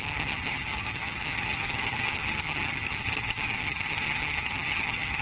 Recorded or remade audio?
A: remade